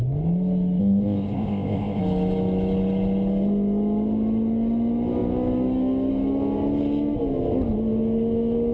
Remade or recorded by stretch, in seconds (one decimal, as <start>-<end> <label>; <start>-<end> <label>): 0.0-0.8 recorded; 0.8-2.0 remade; 2.0-8.7 recorded